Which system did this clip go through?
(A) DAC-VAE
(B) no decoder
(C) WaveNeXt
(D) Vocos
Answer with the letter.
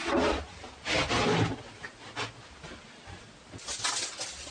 B